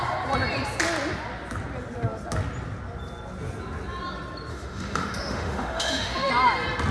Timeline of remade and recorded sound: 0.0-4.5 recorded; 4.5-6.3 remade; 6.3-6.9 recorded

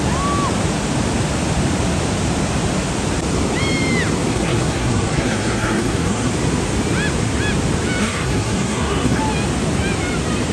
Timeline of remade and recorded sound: 0.0-4.3 recorded; 4.3-6.3 remade; 6.3-8.0 recorded; 8.0-9.2 remade; 9.2-10.5 recorded